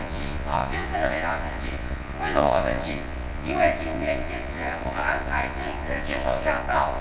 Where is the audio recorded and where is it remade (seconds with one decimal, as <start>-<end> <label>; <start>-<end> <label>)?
0.0-7.0 remade